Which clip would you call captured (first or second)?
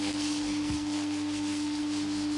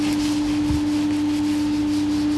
second